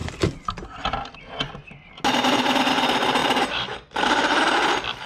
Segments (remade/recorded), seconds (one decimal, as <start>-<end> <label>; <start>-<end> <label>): 0.0-3.2 recorded; 3.2-4.4 remade; 4.4-5.1 recorded